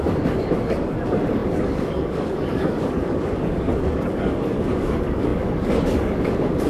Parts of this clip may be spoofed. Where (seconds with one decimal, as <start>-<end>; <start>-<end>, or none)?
0.0-6.7